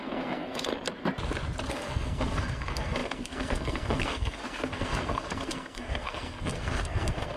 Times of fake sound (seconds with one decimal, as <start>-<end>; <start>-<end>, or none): 0.0-0.7; 1.7-7.4